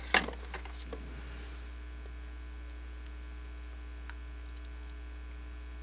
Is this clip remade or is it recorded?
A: recorded